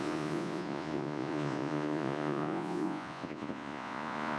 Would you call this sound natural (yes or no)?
no